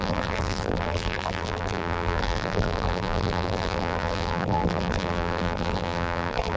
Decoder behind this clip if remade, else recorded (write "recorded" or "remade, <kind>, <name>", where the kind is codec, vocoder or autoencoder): remade, vocoder, BigVGAN v2